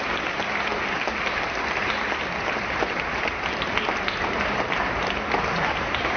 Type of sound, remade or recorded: recorded